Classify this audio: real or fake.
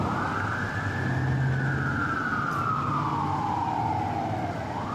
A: real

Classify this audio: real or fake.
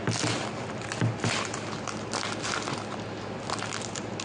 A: real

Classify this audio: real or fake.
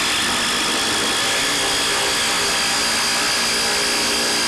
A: real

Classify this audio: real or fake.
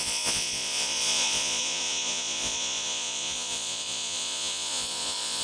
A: fake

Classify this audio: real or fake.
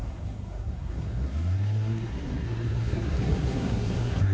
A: fake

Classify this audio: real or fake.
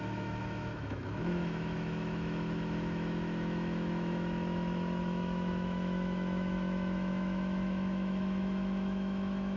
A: fake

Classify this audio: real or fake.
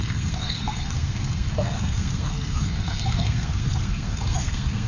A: fake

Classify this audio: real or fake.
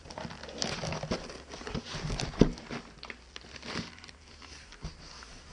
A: real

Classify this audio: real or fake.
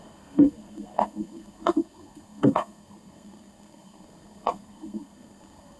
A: fake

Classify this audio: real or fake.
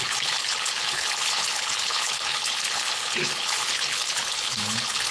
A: fake